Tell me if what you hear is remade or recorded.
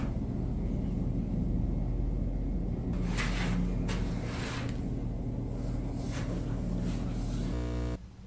recorded